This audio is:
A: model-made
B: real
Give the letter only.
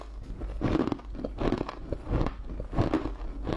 B